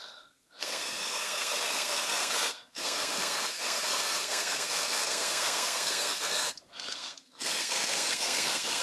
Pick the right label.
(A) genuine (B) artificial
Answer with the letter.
B